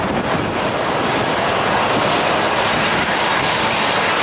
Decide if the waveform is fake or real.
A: real